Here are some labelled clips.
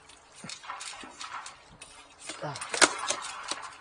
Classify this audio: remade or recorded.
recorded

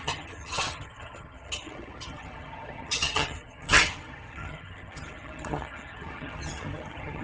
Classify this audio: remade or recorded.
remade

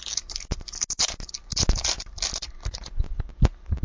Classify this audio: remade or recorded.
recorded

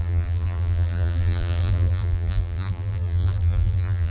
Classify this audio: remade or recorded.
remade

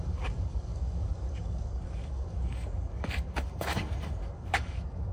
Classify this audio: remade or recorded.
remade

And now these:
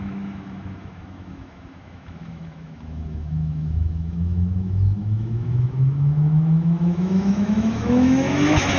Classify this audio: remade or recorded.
remade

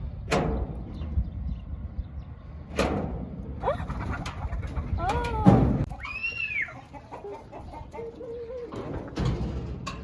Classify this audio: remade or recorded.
recorded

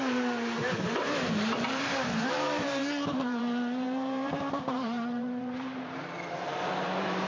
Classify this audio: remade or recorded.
remade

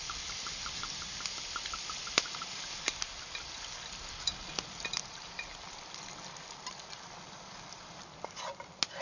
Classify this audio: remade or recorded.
recorded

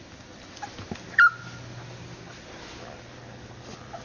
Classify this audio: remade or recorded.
recorded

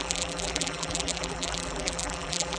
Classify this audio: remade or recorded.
remade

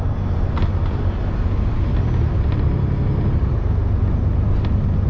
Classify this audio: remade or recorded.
recorded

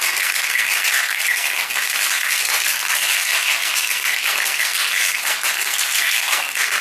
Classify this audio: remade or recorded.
remade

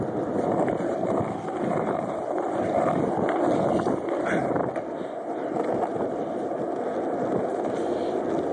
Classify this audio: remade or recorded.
recorded